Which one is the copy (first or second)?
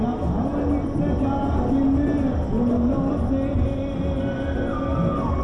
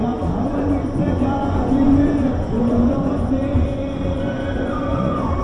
second